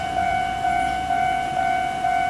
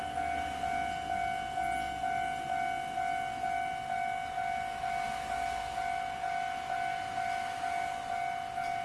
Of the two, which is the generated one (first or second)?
first